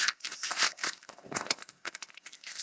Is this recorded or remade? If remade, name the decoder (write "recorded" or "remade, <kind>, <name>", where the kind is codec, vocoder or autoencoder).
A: remade, codec, ZipCodec